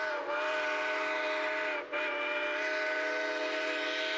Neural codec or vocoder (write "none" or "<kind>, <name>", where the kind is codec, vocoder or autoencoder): none